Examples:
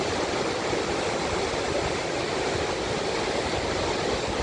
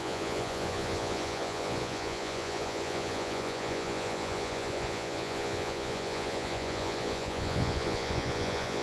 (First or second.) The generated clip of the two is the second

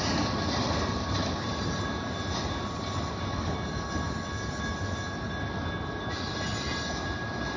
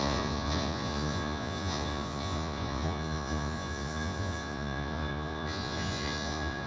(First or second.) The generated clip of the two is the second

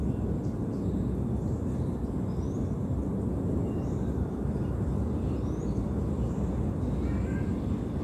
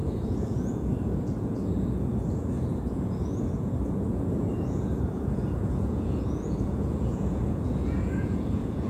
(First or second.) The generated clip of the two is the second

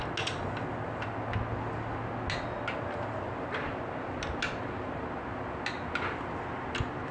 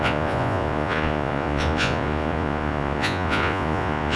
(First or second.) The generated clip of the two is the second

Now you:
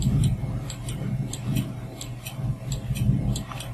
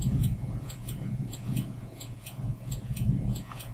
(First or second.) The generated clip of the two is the second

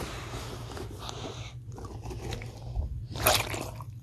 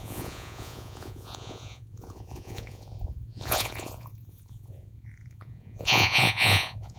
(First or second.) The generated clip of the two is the second